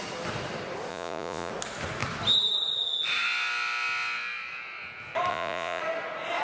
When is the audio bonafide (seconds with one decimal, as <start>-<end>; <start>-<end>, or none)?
0.0-0.9; 1.5-5.3; 5.8-6.4